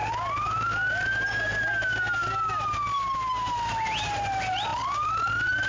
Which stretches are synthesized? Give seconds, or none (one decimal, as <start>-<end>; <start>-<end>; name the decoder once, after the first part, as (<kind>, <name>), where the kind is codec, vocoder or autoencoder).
none